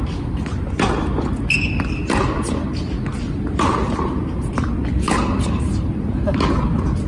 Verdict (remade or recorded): recorded